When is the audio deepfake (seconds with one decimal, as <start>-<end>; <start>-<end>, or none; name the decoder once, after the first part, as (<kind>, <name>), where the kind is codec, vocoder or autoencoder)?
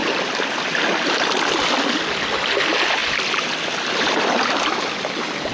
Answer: none